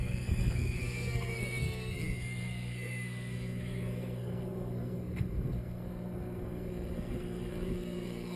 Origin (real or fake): fake